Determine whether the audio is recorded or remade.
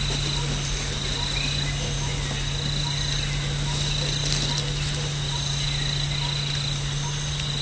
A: recorded